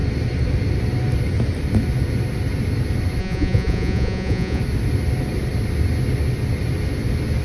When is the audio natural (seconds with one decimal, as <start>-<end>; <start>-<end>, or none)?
0.0-3.2; 4.6-7.4